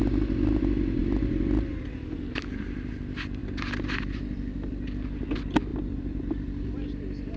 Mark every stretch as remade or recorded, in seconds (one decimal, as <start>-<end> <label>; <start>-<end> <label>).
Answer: 0.0-3.4 recorded; 3.4-4.1 remade; 4.1-5.7 recorded; 5.7-6.7 remade; 6.7-7.4 recorded